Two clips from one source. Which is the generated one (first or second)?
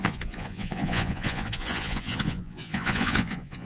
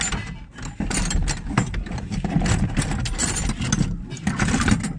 first